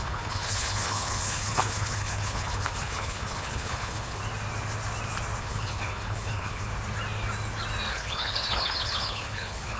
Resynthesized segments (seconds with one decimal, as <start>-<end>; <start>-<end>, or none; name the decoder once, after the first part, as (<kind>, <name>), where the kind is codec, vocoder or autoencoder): 0.0-4.2 (codec, HILCodec); 5.4-6.7; 7.9-9.8